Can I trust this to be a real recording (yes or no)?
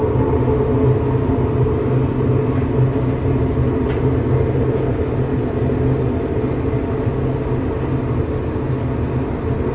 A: yes